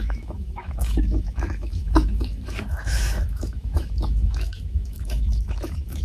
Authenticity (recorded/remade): remade